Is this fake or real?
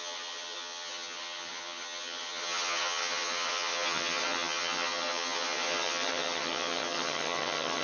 fake